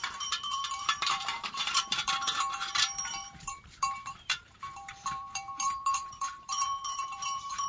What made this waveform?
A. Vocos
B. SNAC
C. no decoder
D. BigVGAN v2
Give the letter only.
D